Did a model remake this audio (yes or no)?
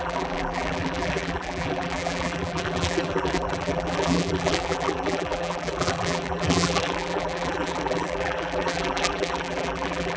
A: yes